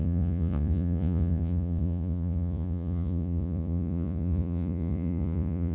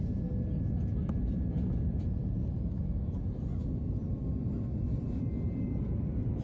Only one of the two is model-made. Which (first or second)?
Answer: first